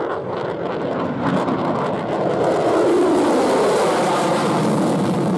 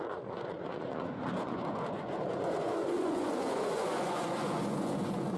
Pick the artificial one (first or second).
second